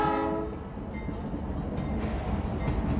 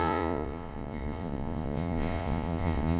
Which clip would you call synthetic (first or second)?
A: second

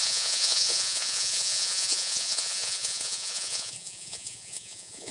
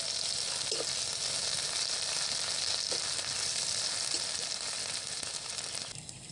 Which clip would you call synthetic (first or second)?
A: first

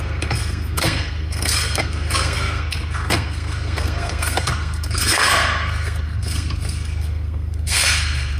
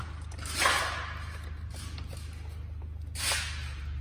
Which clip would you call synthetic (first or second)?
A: first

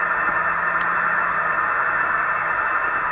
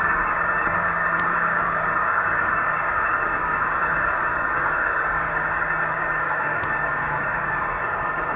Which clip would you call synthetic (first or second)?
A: second